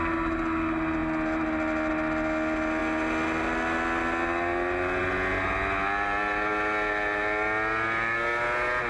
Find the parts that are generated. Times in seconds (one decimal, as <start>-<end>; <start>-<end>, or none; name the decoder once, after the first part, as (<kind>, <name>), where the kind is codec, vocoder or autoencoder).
none